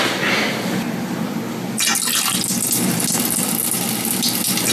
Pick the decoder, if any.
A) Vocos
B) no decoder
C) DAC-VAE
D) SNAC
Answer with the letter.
B